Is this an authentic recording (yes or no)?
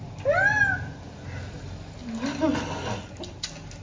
yes